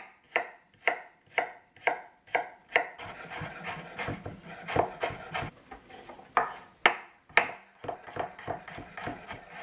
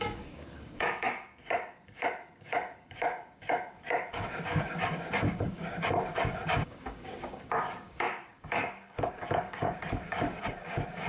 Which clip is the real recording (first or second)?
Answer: first